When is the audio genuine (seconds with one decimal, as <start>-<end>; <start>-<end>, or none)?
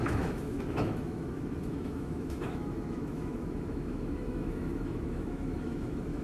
none